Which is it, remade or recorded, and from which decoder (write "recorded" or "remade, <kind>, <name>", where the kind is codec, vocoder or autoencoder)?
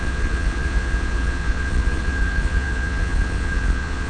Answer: remade, vocoder, Vocos